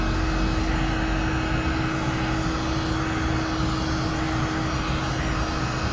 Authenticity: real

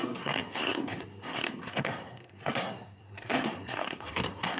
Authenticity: fake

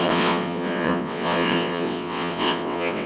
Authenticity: fake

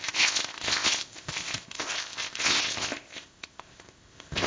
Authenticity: fake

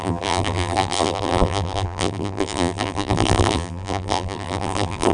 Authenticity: fake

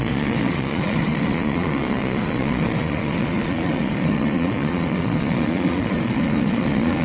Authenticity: fake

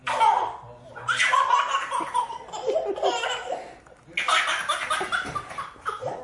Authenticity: real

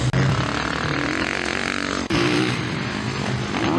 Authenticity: real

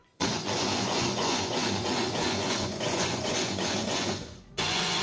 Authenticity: fake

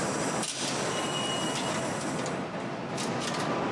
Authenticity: real